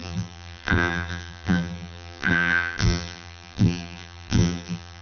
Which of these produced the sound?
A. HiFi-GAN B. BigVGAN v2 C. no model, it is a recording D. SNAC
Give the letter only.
B